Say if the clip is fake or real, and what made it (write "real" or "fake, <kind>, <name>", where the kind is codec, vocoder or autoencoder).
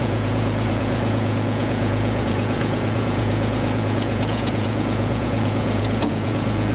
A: fake, vocoder, Vocos